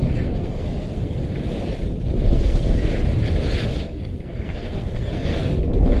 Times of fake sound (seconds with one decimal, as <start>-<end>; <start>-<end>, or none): 0.0-1.2; 2.3-2.9; 3.8-6.0